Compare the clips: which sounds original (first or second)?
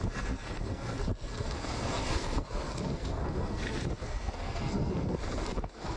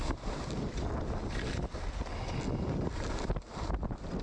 second